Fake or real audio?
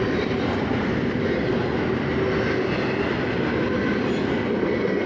real